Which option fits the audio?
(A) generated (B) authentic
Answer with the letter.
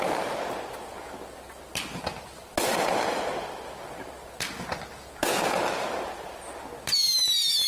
B